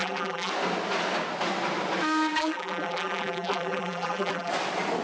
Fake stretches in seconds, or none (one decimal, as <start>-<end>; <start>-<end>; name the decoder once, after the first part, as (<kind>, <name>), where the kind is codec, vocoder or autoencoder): 0.0-0.5 (vocoder, BigVGAN v2); 2.4-4.5